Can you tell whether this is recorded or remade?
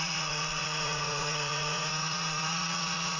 remade